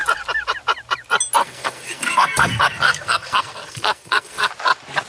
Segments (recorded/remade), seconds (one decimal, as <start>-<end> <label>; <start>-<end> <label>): 0.0-1.4 recorded; 1.4-4.5 remade; 4.5-5.1 recorded